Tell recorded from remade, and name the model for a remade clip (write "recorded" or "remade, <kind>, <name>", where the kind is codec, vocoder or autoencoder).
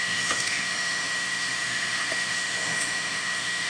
remade, autoencoder, DAC-VAE